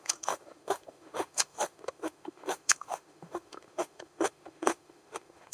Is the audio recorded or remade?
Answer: remade